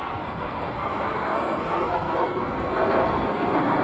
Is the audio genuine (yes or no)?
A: no